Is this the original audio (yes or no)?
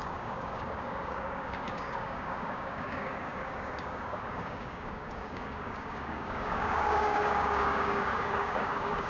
no